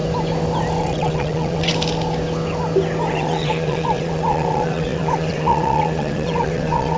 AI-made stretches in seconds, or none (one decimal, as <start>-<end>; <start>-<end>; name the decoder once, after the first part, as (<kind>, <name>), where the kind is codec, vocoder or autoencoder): 0.8-1.7 (vocoder, WaveNeXt); 3.1-7.0